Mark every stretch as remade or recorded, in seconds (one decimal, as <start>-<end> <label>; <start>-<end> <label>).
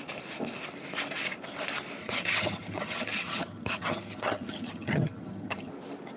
0.0-2.0 recorded; 2.0-5.7 remade; 5.7-6.2 recorded